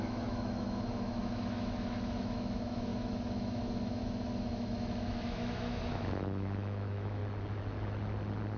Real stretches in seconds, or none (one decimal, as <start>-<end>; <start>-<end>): 7.2-8.6